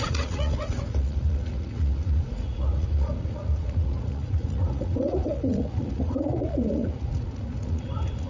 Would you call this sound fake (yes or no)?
yes